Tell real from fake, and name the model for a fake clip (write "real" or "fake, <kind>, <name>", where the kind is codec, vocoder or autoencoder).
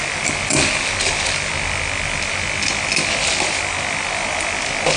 real